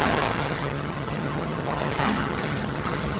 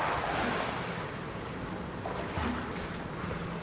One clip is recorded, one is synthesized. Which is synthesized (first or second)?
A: first